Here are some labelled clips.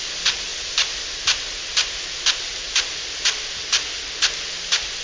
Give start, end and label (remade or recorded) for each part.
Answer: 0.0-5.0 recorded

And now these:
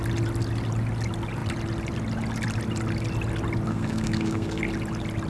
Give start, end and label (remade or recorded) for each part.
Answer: 0.0-3.7 recorded; 3.7-4.6 remade; 4.6-5.3 recorded

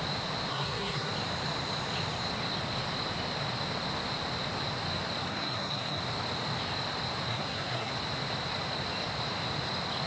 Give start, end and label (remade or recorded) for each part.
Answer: 0.0-0.5 recorded; 0.5-1.1 remade; 1.1-5.3 recorded; 5.3-6.0 remade; 6.0-7.3 recorded; 7.3-7.9 remade; 7.9-10.1 recorded

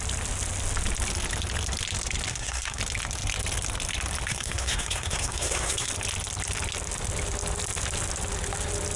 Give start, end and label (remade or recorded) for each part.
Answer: 0.0-2.3 recorded; 2.3-2.8 remade; 2.8-4.3 recorded; 4.3-5.9 remade; 5.9-9.0 recorded

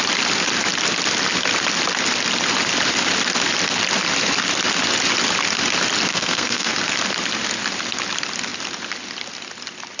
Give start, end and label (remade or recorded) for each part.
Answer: 0.0-6.1 recorded; 6.1-6.7 remade; 6.7-10.0 recorded

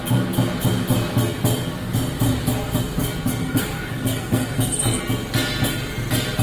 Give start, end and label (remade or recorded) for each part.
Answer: 0.0-3.4 recorded; 3.4-5.0 remade; 5.0-6.4 recorded

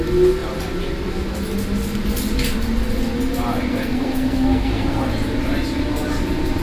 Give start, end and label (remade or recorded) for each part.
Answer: 0.0-3.7 recorded; 3.7-5.0 remade; 5.0-6.6 recorded

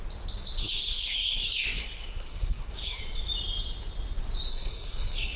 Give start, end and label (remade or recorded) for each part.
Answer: 0.0-0.6 recorded; 0.6-3.0 remade; 3.0-4.5 recorded; 4.5-5.4 remade